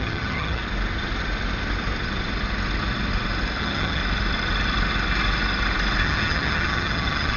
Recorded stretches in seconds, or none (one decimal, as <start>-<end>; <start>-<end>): 0.6-3.6; 4.0-6.0